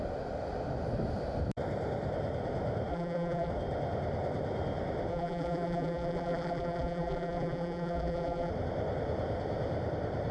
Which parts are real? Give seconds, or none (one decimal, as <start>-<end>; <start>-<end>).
0.0-2.9; 3.5-5.1; 8.5-10.3